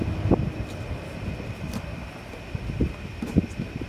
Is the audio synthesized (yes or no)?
no